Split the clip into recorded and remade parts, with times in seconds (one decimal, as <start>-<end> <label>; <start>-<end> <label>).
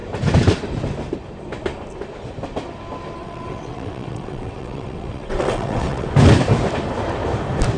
0.0-3.2 recorded; 3.2-6.1 remade; 6.1-7.8 recorded